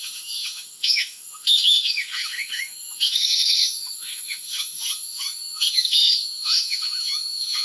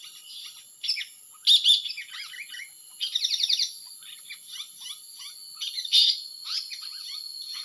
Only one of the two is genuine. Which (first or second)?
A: second